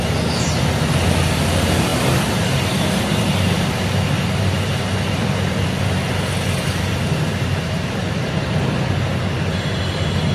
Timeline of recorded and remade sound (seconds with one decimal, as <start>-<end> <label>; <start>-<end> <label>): 0.0-10.3 recorded